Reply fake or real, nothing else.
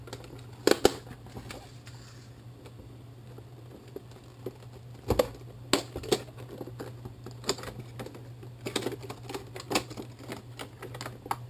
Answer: real